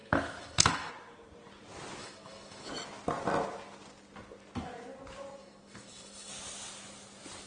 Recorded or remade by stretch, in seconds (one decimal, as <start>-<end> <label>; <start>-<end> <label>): 0.0-0.9 remade; 0.9-2.0 recorded; 2.0-2.7 remade; 2.7-5.4 recorded; 5.4-6.3 remade; 6.3-7.5 recorded